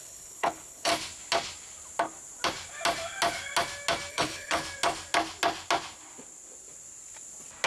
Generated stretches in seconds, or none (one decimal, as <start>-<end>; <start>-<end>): 0.0-0.9; 4.1-4.6